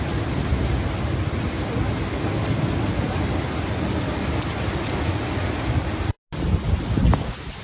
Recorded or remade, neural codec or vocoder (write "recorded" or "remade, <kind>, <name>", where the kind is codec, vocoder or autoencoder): recorded